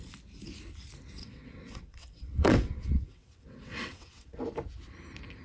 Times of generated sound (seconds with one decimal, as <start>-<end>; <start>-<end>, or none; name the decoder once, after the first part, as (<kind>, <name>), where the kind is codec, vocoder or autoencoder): 1.2-4.4 (vocoder, WaveNeXt)